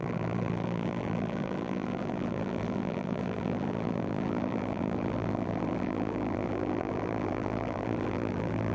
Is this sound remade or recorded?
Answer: remade